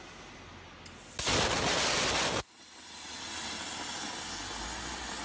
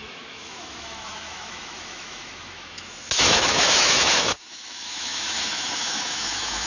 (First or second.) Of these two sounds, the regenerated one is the second